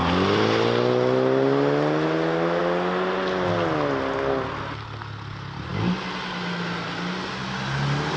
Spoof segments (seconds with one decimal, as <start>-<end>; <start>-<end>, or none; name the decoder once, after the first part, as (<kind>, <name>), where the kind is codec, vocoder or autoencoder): none